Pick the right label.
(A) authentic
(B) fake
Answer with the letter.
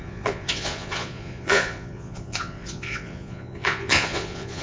B